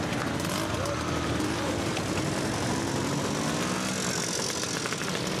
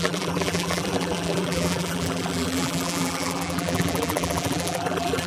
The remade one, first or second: second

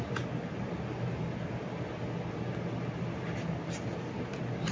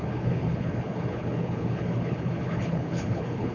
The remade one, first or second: second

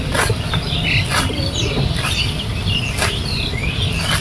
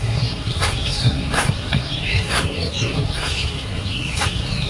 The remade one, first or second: second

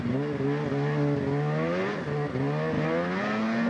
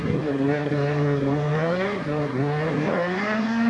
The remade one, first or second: second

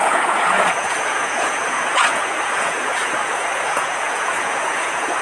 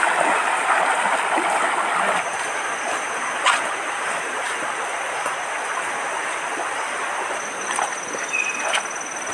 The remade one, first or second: first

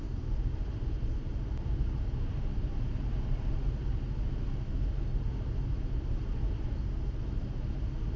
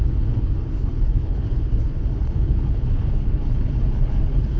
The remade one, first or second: second